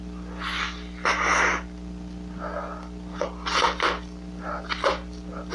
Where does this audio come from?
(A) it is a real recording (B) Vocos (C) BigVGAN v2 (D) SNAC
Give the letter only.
A